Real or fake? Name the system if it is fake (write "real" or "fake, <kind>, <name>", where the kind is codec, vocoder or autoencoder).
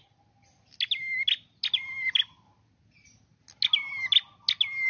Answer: real